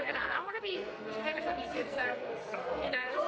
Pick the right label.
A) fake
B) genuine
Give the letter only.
A